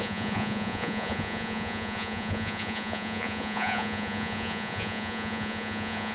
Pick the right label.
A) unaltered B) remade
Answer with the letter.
B